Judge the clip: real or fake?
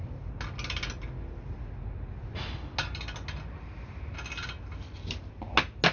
real